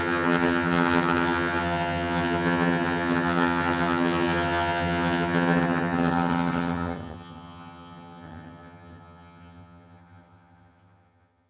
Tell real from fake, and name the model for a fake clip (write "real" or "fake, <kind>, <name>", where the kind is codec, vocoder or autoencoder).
fake, vocoder, HiFi-GAN